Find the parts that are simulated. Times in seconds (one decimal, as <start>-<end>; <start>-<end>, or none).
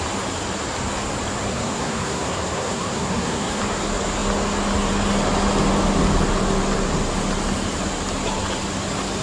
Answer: 1.5-3.6